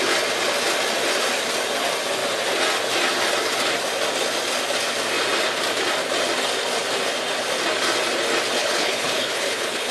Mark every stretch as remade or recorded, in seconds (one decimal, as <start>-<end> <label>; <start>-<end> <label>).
0.0-8.6 recorded; 8.6-9.9 remade